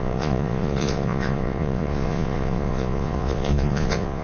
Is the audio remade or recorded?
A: remade